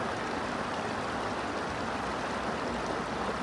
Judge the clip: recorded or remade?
recorded